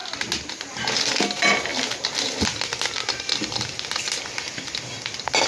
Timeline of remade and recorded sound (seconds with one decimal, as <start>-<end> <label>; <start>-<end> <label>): 0.0-5.5 recorded